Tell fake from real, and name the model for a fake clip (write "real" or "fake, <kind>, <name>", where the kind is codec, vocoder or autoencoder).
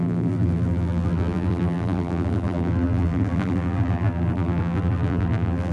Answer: fake, vocoder, BigVGAN v2